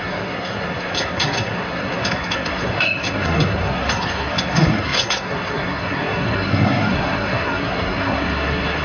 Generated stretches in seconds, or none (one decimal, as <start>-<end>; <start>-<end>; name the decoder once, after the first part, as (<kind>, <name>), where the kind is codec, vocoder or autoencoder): 0.0-8.8 (codec, SNAC)